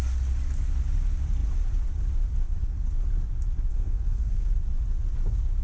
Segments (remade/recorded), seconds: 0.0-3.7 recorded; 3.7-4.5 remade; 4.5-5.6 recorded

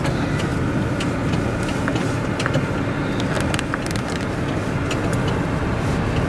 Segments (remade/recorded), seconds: 0.0-6.3 recorded

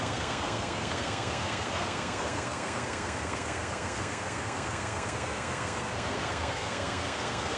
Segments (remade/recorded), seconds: 0.0-7.6 remade

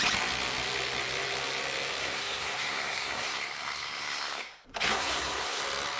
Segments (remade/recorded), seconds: 0.0-2.0 recorded; 2.0-5.6 remade; 5.6-6.0 recorded

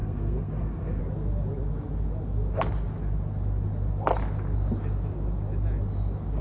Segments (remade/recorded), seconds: 0.0-1.0 remade; 1.0-6.4 recorded